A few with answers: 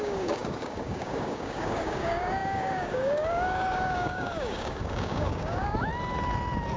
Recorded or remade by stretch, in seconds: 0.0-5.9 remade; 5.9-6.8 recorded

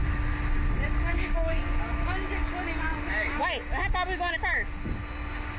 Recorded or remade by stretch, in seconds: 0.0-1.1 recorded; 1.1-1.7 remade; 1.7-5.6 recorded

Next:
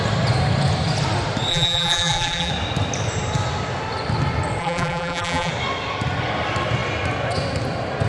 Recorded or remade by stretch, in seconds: 0.0-1.5 recorded; 1.5-2.5 remade; 2.5-4.6 recorded; 4.6-5.5 remade; 5.5-8.1 recorded